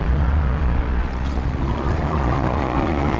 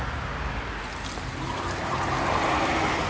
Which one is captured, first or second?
second